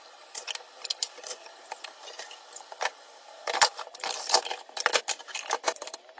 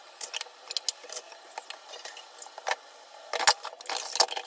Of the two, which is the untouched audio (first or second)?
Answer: second